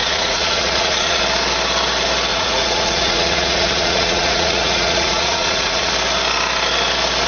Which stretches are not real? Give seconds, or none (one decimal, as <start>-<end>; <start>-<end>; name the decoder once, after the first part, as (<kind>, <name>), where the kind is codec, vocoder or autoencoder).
0.0-1.2 (vocoder, Vocos); 2.3-5.9